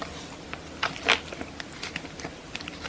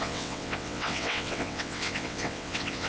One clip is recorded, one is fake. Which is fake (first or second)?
second